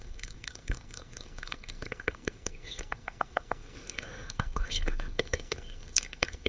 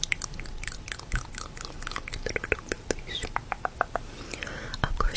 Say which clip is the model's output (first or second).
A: first